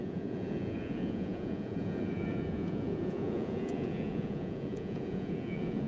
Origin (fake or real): fake